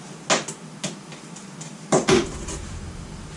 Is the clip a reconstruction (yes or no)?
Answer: no